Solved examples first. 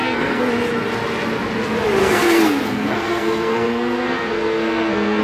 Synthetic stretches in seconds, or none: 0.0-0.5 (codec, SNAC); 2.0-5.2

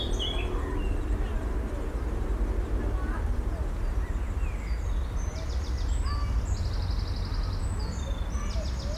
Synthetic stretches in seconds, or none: none

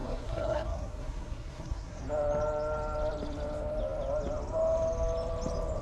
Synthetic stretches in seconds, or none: 0.0-2.0 (codec, SNAC)

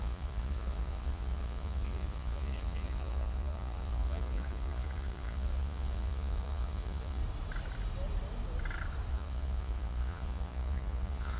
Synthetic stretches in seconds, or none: 0.0-7.2 (vocoder, Vocos); 9.1-11.4

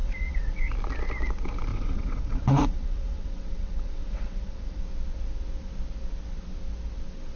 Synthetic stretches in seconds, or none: 0.0-0.6 (vocoder, WaveNeXt); 1.7-4.8